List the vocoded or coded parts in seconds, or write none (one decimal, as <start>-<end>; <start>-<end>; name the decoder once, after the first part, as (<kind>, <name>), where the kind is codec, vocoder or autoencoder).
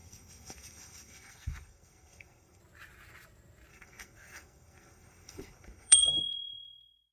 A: 0.0-2.6 (codec, SNAC); 3.7-6.2